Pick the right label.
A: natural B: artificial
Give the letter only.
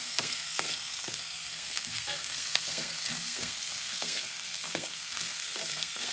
B